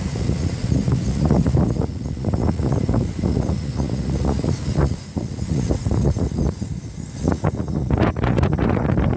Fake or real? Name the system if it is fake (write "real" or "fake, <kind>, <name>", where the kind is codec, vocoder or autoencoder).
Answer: fake, vocoder, Vocos